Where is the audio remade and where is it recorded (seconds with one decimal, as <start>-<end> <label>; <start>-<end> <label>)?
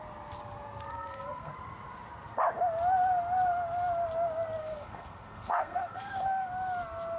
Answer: 0.0-0.9 recorded; 0.9-1.5 remade; 1.5-4.6 recorded; 4.6-6.5 remade; 6.5-7.2 recorded